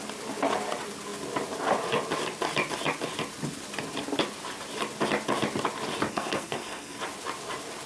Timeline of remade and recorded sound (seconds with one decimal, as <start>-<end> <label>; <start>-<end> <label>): 0.0-6.1 recorded; 6.1-7.0 remade; 7.0-7.9 recorded

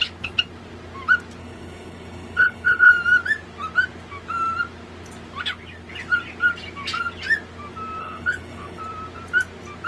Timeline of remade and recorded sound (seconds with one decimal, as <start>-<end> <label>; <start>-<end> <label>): 0.0-1.4 recorded; 1.4-2.9 remade; 2.9-8.0 recorded; 8.0-8.8 remade; 8.8-9.9 recorded

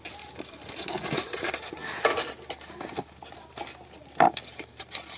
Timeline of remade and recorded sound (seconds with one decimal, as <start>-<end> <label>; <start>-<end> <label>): 0.0-1.2 recorded; 1.2-1.7 remade; 1.7-5.2 recorded

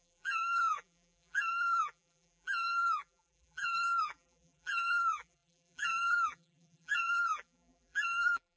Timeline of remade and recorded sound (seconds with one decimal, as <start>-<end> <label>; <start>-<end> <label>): 0.0-8.6 remade

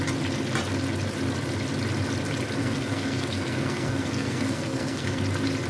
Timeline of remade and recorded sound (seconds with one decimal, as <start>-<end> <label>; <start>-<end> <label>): 0.0-2.6 recorded; 2.6-5.2 remade; 5.2-5.7 recorded